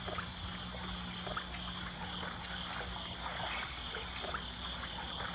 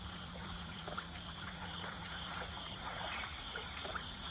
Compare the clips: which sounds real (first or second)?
first